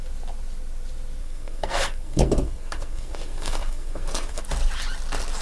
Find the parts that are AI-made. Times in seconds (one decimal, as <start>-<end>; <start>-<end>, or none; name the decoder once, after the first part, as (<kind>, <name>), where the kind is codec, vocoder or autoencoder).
1.2-4.4 (codec, SNAC)